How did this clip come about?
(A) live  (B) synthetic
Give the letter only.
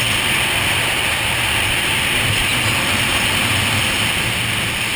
A